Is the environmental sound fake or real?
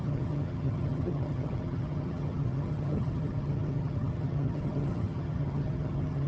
fake